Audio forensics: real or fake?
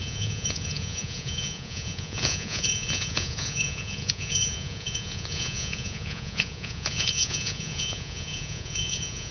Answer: fake